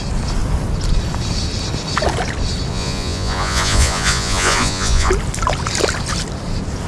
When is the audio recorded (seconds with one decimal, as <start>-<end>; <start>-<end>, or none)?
0.0-2.7; 5.1-6.9